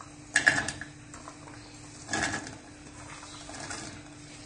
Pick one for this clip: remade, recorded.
recorded